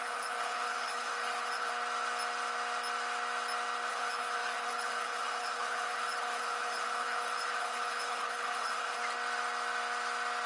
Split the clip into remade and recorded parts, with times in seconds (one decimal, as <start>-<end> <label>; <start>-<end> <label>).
0.0-1.7 remade; 1.7-3.9 recorded; 3.9-9.0 remade; 9.0-10.5 recorded